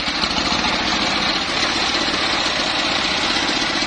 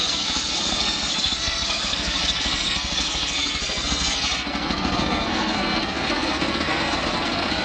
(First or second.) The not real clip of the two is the second